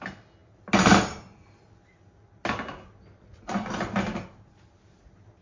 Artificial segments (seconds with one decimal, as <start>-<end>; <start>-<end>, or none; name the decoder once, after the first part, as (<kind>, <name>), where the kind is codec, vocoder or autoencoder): none